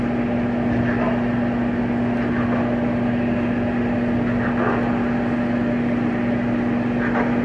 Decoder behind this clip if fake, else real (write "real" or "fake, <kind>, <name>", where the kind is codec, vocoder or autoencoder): real